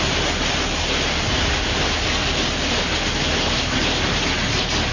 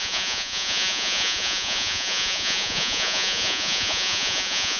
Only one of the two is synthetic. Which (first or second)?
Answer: second